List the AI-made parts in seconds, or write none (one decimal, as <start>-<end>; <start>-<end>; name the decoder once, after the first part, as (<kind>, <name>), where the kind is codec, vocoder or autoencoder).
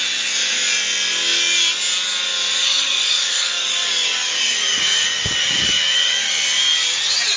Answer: 2.5-6.3 (codec, DAC)